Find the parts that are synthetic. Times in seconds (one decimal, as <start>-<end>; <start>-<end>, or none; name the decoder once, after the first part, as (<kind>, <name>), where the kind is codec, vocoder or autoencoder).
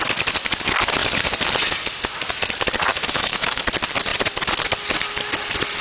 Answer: 2.9-3.6 (autoencoder, DAC-VAE)